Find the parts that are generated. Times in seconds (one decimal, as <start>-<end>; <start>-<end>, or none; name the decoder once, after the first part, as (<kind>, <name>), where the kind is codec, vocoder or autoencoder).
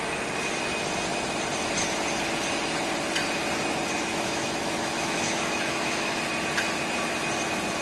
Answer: 4.1-6.2 (autoencoder, DAC-VAE)